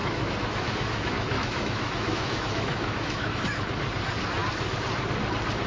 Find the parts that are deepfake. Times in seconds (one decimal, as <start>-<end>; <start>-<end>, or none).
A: 0.0-3.4